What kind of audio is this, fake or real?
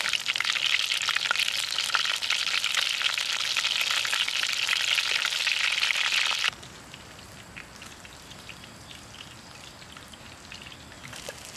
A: real